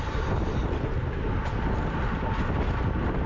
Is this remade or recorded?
recorded